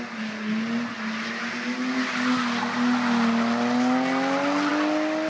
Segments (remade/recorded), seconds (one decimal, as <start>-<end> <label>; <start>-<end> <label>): 0.0-5.3 recorded